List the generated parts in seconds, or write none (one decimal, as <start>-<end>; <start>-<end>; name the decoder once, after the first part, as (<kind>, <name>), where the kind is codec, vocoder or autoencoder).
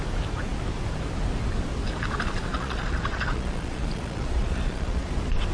2.5-5.1 (vocoder, Vocos)